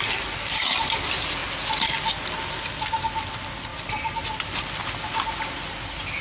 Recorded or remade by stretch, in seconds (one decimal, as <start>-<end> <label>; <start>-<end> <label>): 0.0-6.2 recorded